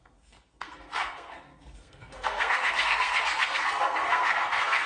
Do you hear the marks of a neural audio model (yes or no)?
yes